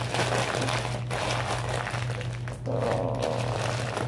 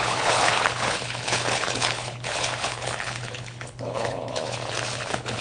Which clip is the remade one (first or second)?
second